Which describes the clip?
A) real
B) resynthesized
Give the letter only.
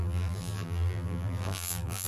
B